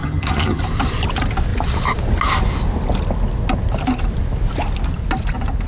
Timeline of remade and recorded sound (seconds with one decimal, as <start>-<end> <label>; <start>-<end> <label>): 0.0-0.6 remade; 0.6-5.7 recorded